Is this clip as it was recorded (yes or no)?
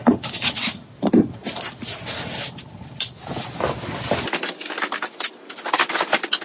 yes